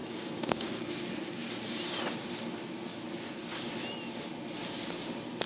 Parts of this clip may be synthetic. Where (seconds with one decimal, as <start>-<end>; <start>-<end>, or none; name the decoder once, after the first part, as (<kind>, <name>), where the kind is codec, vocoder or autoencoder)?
0.0-0.8 (codec, DAC)